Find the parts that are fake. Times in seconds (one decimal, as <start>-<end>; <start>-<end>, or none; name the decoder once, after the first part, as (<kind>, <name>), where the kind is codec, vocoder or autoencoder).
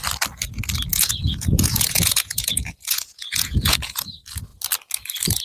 0.9-4.1 (vocoder, Vocos)